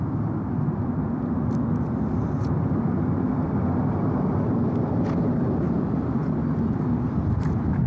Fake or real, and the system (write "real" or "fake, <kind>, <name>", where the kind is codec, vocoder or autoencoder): real